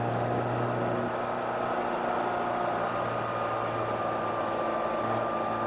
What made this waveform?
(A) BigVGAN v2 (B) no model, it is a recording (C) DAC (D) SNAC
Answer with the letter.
B